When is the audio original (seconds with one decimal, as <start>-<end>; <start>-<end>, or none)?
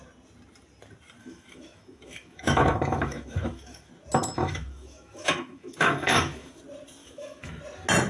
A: 0.0-1.2; 3.9-4.4; 6.6-7.0; 7.6-8.1